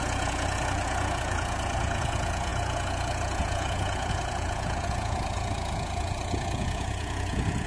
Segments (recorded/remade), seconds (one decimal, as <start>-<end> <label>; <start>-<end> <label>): 0.0-7.7 remade